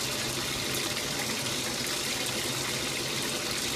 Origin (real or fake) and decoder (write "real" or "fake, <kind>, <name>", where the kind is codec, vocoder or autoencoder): real